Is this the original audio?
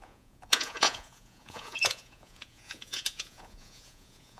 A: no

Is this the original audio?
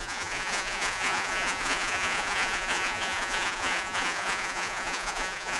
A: no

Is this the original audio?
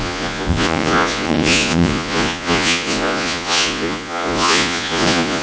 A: no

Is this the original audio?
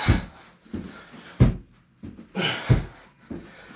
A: yes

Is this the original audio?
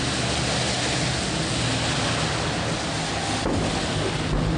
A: yes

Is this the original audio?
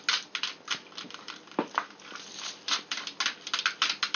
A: yes